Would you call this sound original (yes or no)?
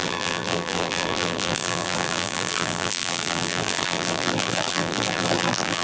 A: no